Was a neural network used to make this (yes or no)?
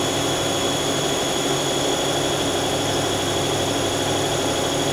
no